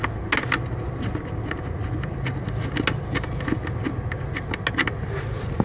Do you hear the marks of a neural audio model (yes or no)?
no